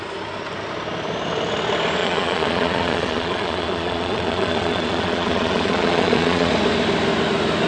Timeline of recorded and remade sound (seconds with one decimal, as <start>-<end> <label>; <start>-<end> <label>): 0.0-2.0 recorded; 2.0-6.5 remade; 6.5-7.7 recorded